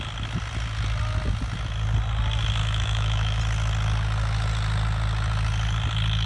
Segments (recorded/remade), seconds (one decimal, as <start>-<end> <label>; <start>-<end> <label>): 0.0-2.6 recorded; 2.6-3.4 remade; 3.4-6.3 recorded